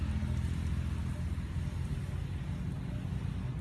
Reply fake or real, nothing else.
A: real